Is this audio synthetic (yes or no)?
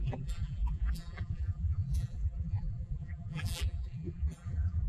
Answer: yes